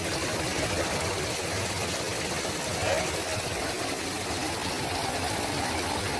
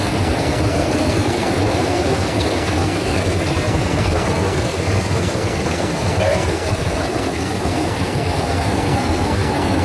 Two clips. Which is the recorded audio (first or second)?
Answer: first